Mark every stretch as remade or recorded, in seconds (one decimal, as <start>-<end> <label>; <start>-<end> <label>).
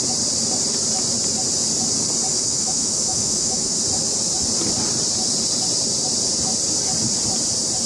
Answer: 0.0-2.3 recorded; 2.3-3.8 remade; 3.8-7.9 recorded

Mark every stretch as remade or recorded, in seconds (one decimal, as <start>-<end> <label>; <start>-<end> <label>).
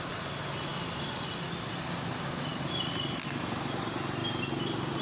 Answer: 0.0-5.0 recorded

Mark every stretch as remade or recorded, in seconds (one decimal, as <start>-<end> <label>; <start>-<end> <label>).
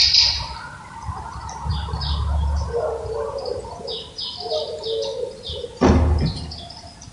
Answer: 0.0-7.1 recorded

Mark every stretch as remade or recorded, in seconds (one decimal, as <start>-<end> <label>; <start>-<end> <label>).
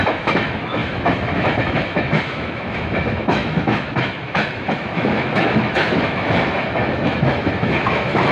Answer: 0.0-8.3 remade